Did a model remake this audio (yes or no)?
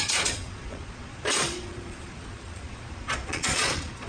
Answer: yes